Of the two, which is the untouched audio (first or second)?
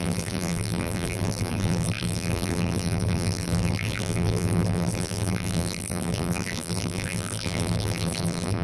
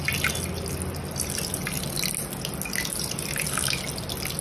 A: second